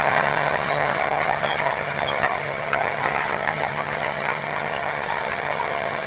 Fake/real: fake